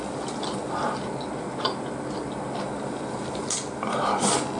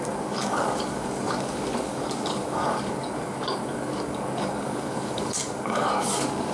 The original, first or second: first